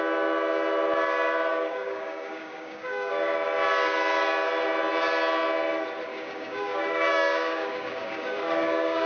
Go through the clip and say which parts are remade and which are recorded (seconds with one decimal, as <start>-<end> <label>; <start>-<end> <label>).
0.0-1.5 recorded; 1.5-3.1 remade; 3.1-6.1 recorded; 6.1-9.1 remade